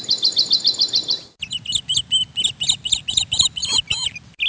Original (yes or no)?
yes